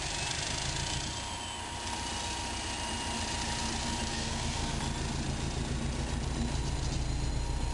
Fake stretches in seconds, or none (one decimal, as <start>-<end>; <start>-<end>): 4.1-4.8